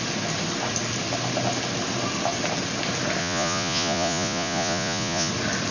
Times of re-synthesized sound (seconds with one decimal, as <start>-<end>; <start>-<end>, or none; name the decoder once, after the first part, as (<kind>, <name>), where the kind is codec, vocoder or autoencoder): 3.2-5.3 (vocoder, Vocos)